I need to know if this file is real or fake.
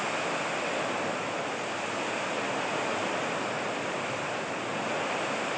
real